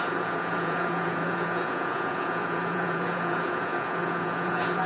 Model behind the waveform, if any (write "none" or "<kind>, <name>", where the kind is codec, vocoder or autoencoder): vocoder, Vocos